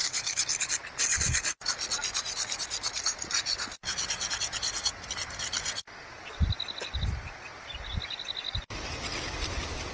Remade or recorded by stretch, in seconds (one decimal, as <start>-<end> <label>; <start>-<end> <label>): 0.0-9.9 recorded